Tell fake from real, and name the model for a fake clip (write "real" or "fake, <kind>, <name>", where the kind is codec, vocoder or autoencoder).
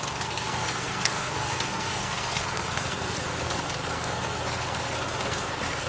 fake, codec, SNAC